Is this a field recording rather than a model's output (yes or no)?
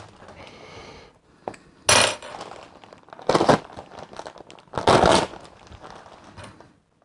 yes